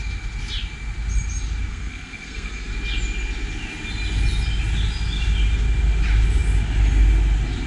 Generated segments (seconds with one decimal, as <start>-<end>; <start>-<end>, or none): 1.7-2.7